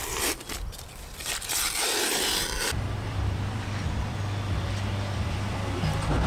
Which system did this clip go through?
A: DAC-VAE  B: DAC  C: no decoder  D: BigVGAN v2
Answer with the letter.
D